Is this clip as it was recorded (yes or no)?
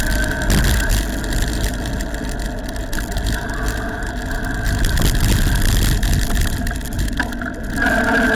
yes